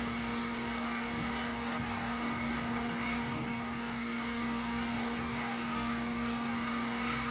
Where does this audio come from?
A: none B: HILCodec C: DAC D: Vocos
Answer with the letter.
C